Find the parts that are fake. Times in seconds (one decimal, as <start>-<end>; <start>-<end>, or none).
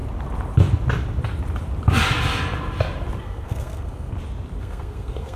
3.2-4.1; 4.6-5.4